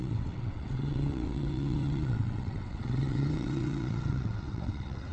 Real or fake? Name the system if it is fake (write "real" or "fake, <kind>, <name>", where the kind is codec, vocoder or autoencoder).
fake, vocoder, WaveNeXt